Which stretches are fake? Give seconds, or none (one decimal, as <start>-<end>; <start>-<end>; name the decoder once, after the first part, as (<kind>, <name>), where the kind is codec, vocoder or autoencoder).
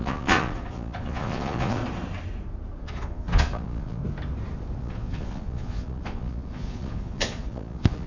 0.0-1.8 (vocoder, Vocos); 2.8-4.0; 4.8-8.1